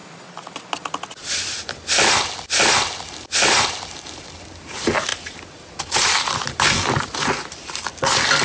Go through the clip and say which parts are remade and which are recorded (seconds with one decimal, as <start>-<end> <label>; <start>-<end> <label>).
0.0-8.4 recorded